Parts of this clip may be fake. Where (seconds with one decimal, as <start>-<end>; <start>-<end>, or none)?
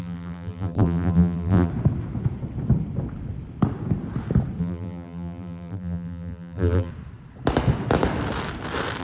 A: 0.0-1.7; 4.6-6.9